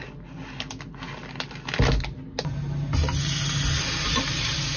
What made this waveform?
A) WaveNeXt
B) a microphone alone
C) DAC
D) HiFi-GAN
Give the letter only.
B